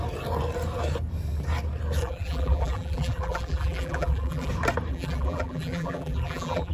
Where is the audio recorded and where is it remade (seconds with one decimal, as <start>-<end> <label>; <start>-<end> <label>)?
0.0-2.0 recorded; 2.0-4.5 remade; 4.5-4.9 recorded; 4.9-6.7 remade